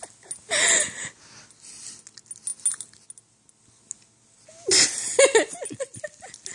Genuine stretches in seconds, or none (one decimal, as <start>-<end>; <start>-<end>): 0.0-6.5

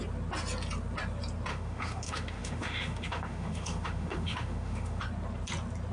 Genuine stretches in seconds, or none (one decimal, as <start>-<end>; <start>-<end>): 0.0-1.5; 5.0-5.9

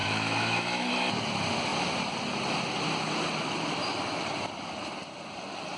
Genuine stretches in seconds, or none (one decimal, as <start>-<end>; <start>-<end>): 0.9-5.8

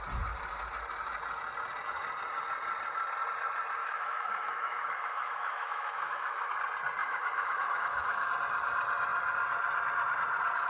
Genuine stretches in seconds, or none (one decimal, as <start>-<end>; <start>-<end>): 0.0-3.8; 6.5-7.0; 8.3-10.7

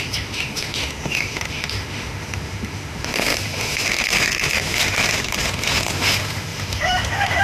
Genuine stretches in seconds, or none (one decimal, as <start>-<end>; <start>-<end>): none